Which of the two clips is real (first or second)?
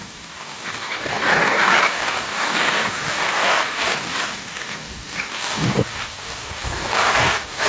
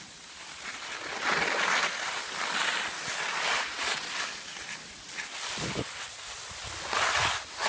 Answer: second